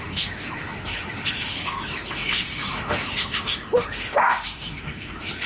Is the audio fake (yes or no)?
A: yes